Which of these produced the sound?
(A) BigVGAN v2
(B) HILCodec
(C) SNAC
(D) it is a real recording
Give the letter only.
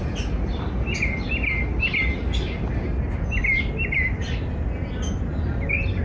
D